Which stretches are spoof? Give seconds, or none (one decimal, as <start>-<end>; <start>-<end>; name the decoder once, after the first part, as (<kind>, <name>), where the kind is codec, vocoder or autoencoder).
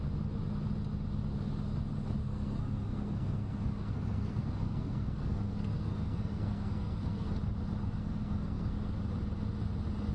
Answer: 2.2-7.3 (codec, SNAC); 7.8-9.0